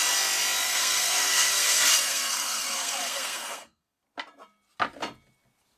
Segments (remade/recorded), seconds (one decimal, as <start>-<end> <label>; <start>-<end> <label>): 0.0-0.7 recorded; 0.7-4.0 remade; 4.0-5.8 recorded